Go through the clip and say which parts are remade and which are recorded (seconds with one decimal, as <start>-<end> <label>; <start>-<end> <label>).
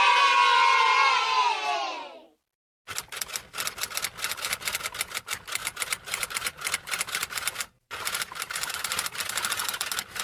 0.0-5.6 recorded; 5.6-10.2 remade